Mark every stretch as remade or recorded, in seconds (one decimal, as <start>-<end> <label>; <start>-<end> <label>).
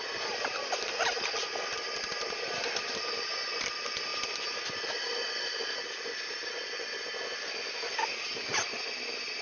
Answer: 0.0-9.4 recorded